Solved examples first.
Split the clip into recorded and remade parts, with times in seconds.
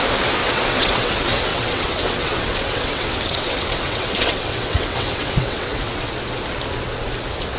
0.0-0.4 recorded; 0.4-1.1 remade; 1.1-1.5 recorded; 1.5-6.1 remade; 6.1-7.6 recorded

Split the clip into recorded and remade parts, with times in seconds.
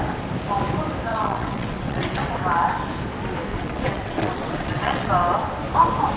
0.0-1.1 recorded; 1.1-2.3 remade; 2.3-3.5 recorded; 3.5-5.1 remade; 5.1-6.2 recorded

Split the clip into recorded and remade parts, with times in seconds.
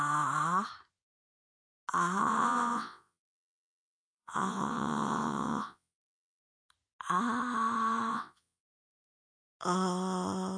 0.0-2.2 recorded; 2.2-6.4 remade; 6.4-8.1 recorded; 8.1-9.1 remade; 9.1-10.6 recorded